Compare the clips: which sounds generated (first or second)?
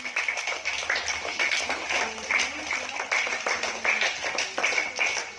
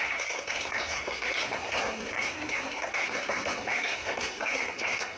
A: second